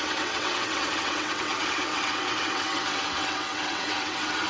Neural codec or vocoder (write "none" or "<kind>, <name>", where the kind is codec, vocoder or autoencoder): vocoder, WaveNeXt